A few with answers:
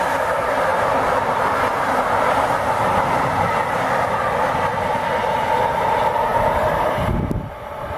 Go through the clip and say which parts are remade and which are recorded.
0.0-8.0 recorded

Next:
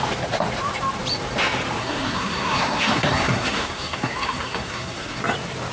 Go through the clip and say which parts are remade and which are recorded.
0.0-1.8 recorded; 1.8-5.2 remade; 5.2-5.7 recorded

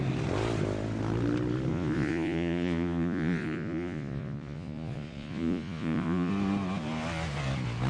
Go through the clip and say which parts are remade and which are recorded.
0.0-1.7 recorded; 1.7-6.3 remade; 6.3-7.9 recorded

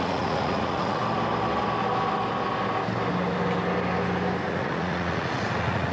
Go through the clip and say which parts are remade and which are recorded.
0.0-1.0 remade; 1.0-4.5 recorded; 4.5-5.9 remade